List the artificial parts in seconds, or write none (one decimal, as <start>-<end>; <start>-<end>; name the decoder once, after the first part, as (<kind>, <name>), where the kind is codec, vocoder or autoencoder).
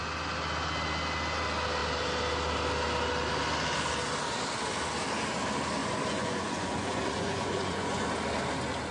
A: 5.8-8.0 (vocoder, Vocos)